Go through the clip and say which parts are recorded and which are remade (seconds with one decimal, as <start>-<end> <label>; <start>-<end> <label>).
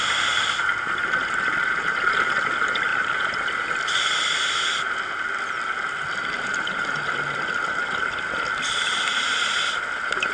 0.0-2.9 recorded; 2.9-3.5 remade; 3.5-10.3 recorded